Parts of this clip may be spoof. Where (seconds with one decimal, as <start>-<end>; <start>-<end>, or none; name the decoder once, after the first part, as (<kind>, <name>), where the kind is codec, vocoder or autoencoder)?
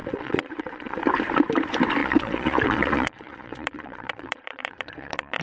0.0-1.0 (vocoder, Vocos); 2.0-5.4